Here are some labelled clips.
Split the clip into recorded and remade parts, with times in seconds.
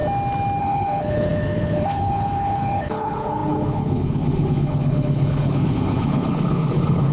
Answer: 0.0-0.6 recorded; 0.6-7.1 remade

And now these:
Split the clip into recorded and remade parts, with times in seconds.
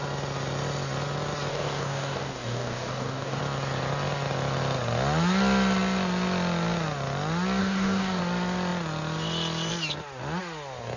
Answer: 0.0-1.5 recorded; 1.5-3.4 remade; 3.4-7.6 recorded; 7.6-8.2 remade; 8.2-11.0 recorded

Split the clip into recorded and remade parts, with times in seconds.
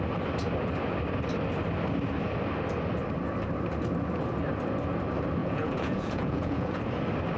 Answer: 0.0-5.4 recorded; 5.4-6.8 remade; 6.8-7.4 recorded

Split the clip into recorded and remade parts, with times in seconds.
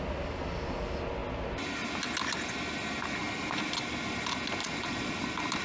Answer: 0.0-4.6 recorded; 4.6-5.1 remade; 5.1-5.6 recorded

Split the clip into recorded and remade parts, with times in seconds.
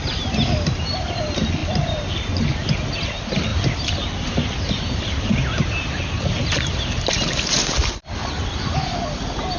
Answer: 0.0-3.5 recorded; 3.5-7.6 remade; 7.6-8.2 recorded; 8.2-9.1 remade; 9.1-9.6 recorded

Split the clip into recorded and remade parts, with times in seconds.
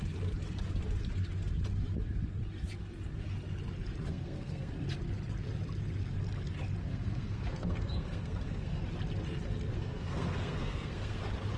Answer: 0.0-4.1 recorded; 4.1-4.7 remade; 4.7-6.8 recorded; 6.8-8.8 remade; 8.8-9.7 recorded; 9.7-11.2 remade; 11.2-11.6 recorded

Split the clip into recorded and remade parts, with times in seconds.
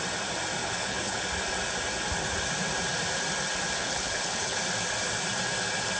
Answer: 0.0-0.6 recorded; 0.6-1.2 remade; 1.2-3.8 recorded; 3.8-4.6 remade; 4.6-6.0 recorded